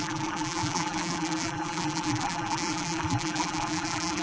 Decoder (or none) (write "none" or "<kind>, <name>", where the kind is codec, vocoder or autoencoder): vocoder, BigVGAN v2